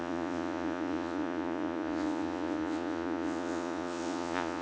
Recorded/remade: remade